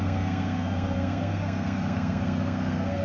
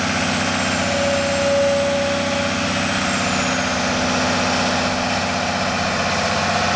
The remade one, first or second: first